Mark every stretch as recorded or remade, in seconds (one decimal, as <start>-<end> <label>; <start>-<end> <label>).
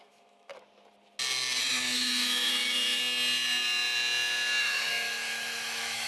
0.0-0.5 remade; 0.5-1.6 recorded; 1.6-3.0 remade; 3.0-4.6 recorded; 4.6-6.1 remade